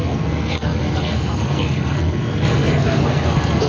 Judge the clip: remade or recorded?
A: remade